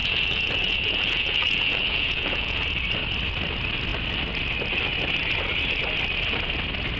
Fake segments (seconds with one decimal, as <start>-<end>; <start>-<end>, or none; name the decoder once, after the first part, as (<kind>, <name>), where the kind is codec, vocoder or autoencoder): 0.0-2.6 (vocoder, Vocos)

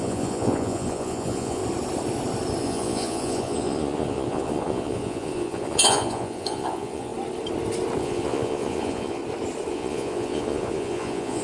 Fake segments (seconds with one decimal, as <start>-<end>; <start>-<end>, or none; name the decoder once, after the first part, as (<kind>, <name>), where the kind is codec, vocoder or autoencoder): 0.0-1.6 (vocoder, Vocos); 2.6-7.1; 8.0-9.2; 9.7-11.4

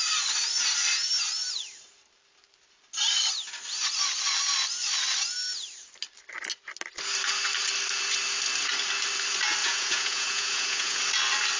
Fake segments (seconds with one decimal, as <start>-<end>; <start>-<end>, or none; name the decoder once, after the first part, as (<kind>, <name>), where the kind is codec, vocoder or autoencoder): 9.6-11.0 (vocoder, Vocos)

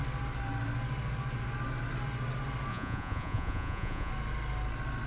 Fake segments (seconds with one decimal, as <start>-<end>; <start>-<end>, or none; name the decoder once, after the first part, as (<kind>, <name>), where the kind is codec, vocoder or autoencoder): 2.7-4.1 (vocoder, Vocos)

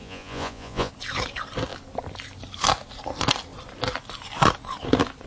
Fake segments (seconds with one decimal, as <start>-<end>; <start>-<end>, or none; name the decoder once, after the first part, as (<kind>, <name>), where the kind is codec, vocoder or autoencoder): 0.0-0.9 (vocoder, Vocos)

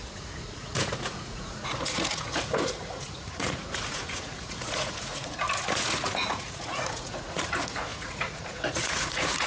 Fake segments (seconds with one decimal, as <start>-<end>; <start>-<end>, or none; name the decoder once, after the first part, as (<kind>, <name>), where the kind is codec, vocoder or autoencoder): 0.0-9.5 (vocoder, Vocos)

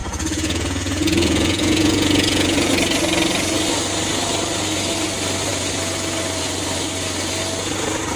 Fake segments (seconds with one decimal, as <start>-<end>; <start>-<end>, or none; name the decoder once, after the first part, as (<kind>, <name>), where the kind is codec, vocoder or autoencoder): 0.0-2.7 (vocoder, Vocos)